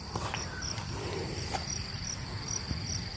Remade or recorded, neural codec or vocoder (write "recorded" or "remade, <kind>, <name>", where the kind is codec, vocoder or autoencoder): remade, vocoder, BigVGAN v2